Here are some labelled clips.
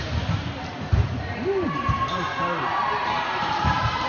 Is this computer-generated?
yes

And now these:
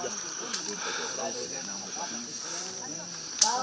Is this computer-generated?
yes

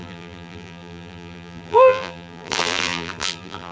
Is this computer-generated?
yes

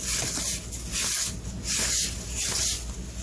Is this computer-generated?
no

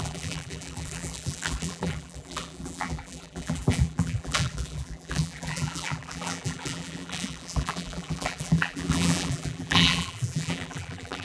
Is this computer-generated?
yes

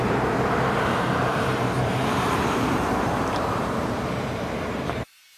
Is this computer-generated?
yes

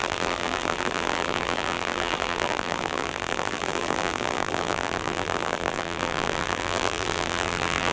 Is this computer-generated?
yes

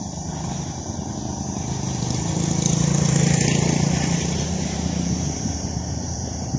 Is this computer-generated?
yes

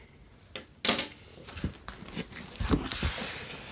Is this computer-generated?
no